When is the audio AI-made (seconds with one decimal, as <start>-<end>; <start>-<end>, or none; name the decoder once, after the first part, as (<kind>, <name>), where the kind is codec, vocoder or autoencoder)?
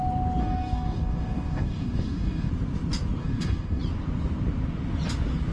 0.4-2.5 (codec, DAC); 3.2-3.8